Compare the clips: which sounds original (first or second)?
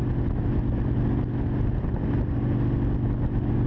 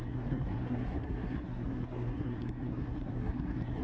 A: first